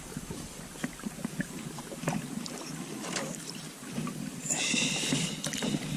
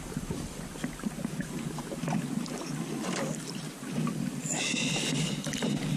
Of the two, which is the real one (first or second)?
second